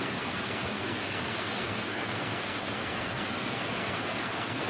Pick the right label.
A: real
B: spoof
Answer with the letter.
B